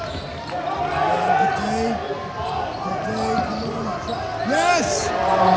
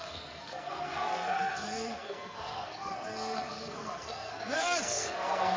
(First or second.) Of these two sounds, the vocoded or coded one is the second